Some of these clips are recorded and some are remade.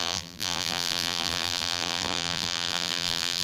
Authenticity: remade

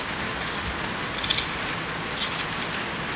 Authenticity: recorded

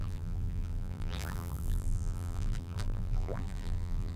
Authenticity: remade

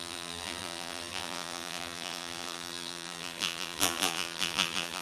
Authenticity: remade